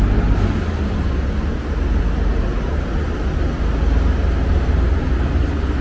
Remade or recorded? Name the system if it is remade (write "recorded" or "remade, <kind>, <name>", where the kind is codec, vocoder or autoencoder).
recorded